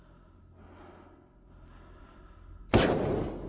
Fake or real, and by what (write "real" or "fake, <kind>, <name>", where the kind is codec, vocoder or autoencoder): real